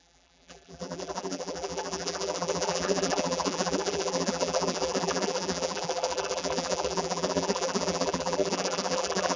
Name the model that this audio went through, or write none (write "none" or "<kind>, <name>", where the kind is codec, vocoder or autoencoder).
vocoder, BigVGAN v2